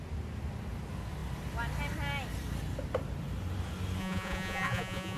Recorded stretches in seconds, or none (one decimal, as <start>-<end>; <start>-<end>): 0.0-4.0

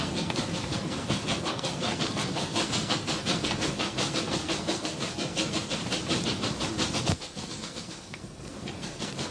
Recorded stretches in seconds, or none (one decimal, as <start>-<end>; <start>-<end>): 5.8-7.0

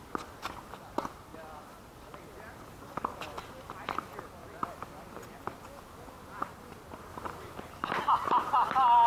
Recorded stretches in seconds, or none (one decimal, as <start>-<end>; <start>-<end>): 0.0-1.3; 3.5-9.1

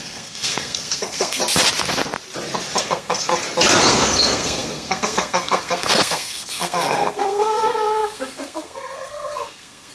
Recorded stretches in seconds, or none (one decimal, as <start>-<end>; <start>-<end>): 1.4-2.8; 3.3-3.8

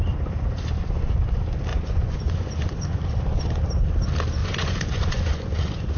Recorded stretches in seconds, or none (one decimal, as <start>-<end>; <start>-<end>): 0.0-1.7; 3.1-4.4

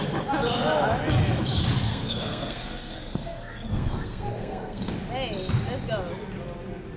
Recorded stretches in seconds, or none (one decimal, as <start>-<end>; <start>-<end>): 0.0-1.9; 4.9-7.0